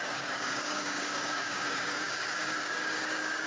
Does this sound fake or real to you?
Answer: fake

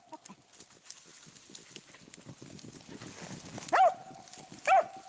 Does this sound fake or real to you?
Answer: real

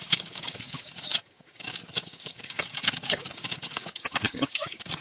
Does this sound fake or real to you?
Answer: fake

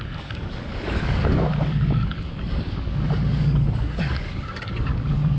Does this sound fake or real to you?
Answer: fake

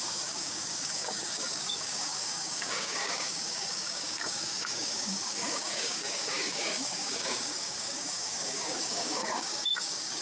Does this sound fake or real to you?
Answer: fake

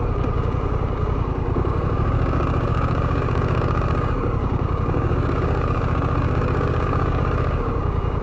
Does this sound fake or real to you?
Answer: fake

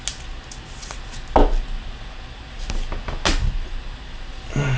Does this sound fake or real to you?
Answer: real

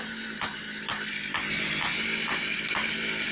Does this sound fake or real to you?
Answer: real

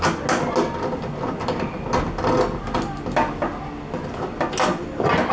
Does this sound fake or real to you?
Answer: real